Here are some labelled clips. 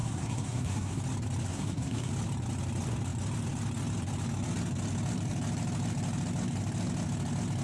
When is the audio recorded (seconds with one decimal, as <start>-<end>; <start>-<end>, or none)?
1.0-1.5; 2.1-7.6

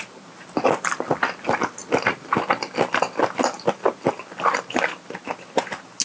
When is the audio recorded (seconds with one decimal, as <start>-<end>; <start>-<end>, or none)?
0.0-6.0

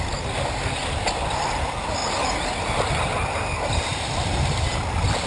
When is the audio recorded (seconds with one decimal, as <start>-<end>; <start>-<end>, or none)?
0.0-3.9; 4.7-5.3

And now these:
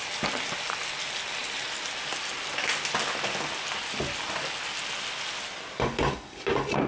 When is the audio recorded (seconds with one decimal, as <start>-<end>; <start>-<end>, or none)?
0.0-6.9

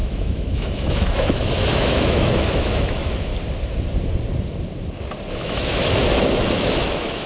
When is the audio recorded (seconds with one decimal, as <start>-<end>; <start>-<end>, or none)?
3.3-5.3

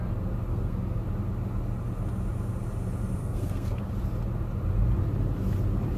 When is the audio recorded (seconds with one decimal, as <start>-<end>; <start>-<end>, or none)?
0.0-0.5; 1.0-3.2; 3.9-6.0

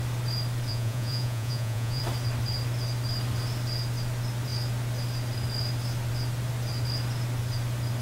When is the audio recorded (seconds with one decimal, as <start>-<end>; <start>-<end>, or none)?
0.0-0.7; 2.0-8.0

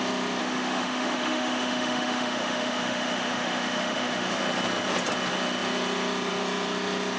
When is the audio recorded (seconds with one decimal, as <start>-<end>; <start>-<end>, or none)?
0.0-0.4; 4.4-7.2